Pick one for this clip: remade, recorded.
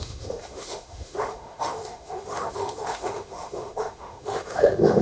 remade